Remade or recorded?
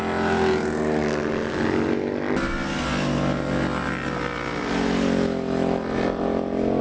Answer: recorded